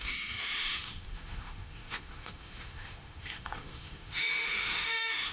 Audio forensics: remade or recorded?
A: remade